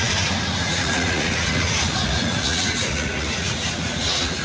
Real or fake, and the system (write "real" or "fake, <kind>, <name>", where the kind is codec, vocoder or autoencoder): fake, vocoder, Vocos